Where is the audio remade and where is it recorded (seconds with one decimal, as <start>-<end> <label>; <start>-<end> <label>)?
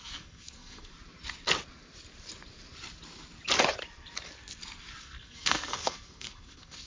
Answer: 0.0-0.9 remade; 0.9-5.0 recorded; 5.0-6.9 remade